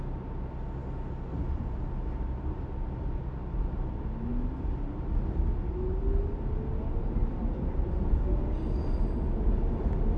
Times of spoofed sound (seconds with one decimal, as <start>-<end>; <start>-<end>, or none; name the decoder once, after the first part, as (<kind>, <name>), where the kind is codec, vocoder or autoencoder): none